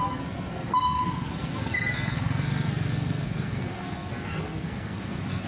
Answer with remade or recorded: remade